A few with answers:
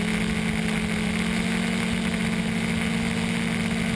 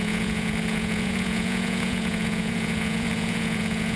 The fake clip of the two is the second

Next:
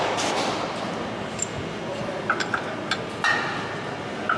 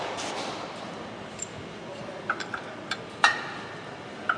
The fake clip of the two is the second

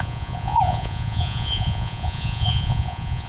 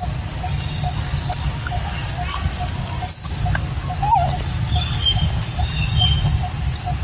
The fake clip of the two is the first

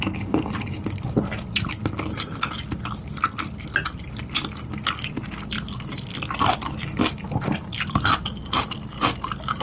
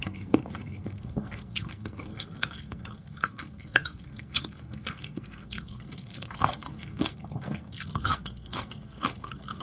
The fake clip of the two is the second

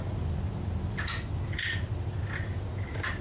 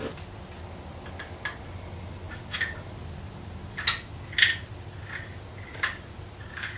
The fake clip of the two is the first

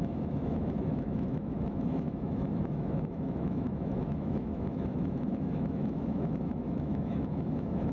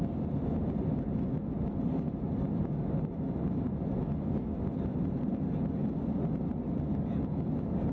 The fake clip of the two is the first